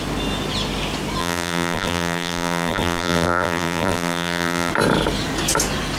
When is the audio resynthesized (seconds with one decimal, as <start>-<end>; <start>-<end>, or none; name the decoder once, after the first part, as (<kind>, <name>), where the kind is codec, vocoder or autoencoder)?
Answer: 1.2-4.7 (vocoder, BigVGAN v2)